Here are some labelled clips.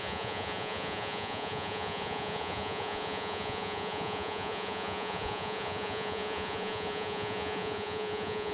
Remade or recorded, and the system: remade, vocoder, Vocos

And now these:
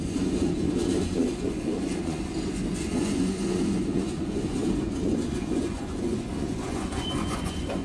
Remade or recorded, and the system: remade, vocoder, Vocos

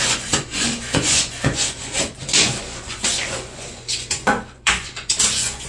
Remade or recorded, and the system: remade, vocoder, Vocos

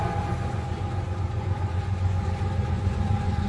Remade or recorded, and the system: remade, vocoder, Vocos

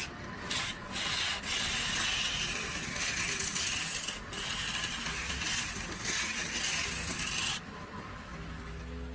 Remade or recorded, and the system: recorded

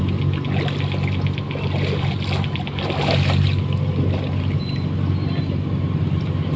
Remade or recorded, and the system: recorded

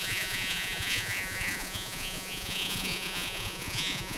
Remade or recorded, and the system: remade, vocoder, Vocos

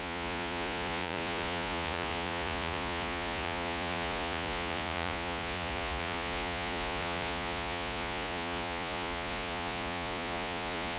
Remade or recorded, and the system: remade, vocoder, Vocos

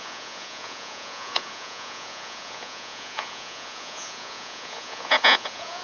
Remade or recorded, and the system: remade, vocoder, Vocos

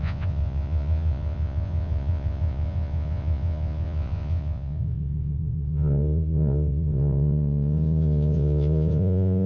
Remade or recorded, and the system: remade, vocoder, Vocos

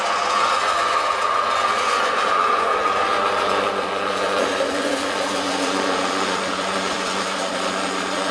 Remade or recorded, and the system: remade, vocoder, Vocos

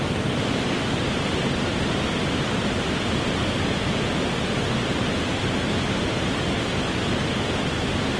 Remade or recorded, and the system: recorded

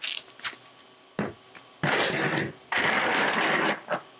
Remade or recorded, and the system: recorded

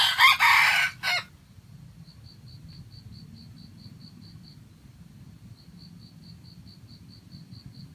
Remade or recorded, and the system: recorded